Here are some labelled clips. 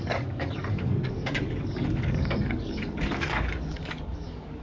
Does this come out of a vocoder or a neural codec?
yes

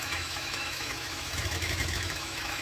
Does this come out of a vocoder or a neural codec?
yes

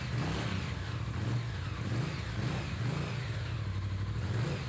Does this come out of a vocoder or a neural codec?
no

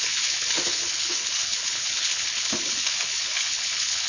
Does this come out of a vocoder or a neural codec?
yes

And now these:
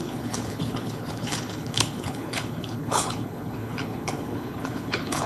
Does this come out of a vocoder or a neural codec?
yes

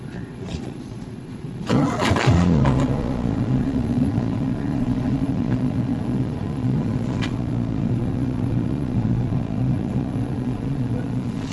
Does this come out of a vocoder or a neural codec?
yes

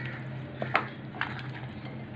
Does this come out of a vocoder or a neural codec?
no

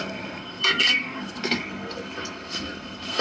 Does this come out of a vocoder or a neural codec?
yes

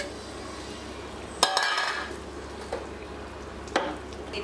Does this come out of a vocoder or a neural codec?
no